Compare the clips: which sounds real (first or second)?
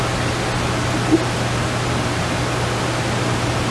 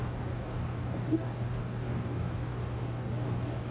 first